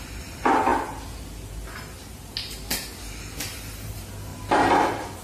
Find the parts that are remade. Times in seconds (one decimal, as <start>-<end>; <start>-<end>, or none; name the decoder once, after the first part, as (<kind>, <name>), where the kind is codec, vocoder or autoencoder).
none